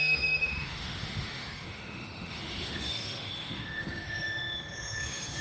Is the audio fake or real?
fake